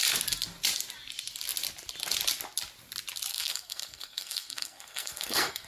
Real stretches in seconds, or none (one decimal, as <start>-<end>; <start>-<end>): 0.0-3.3